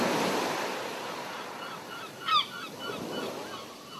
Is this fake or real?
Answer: real